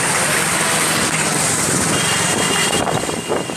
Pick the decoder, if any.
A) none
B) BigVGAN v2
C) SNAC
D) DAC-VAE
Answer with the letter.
A